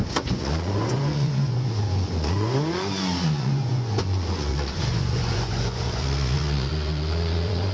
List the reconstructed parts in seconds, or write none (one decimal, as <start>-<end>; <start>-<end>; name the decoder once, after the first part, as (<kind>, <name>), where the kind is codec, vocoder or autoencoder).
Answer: 0.0-7.7 (vocoder, Vocos)